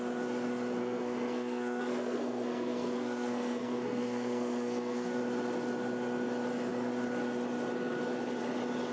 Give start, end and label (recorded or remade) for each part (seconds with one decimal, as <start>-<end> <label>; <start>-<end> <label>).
0.0-0.8 recorded; 0.8-5.2 remade; 5.2-8.9 recorded